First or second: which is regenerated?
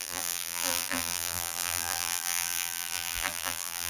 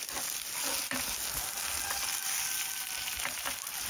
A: first